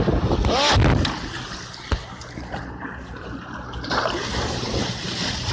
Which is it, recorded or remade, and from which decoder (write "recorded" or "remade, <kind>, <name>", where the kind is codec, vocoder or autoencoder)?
recorded